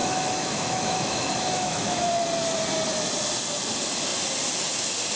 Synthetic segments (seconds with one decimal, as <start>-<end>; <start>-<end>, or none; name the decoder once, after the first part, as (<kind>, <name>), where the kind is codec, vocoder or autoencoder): 0.0-2.1 (autoencoder, DAC-VAE)